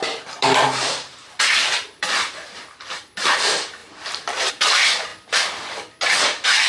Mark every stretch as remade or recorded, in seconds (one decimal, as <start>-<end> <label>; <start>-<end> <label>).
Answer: 0.0-5.1 remade; 5.1-6.7 recorded